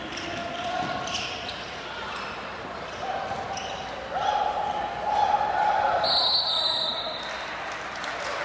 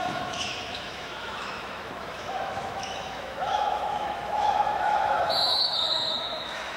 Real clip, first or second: first